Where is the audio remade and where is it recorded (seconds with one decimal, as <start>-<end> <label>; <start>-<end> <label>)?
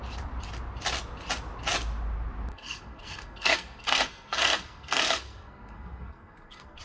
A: 0.0-2.5 recorded; 2.5-6.8 remade